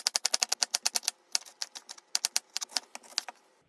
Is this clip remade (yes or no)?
no